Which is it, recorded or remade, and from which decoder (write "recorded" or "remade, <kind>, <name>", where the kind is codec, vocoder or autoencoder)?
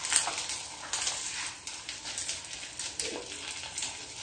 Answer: recorded